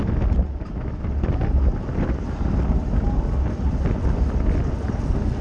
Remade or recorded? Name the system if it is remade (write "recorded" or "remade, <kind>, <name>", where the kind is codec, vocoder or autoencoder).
recorded